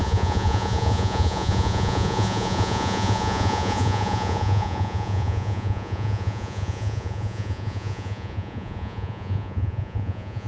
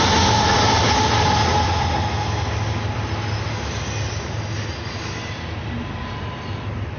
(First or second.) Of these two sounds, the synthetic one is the first